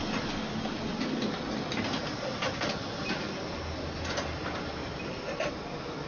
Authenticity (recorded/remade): recorded